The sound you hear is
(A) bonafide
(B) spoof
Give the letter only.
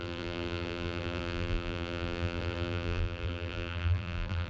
B